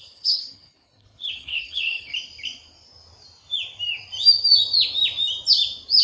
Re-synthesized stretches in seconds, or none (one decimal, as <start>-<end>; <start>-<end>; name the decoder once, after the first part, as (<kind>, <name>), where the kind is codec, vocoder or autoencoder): 0.0-2.1 (codec, HILCodec)